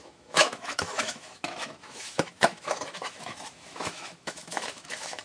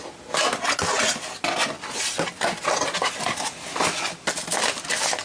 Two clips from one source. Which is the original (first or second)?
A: second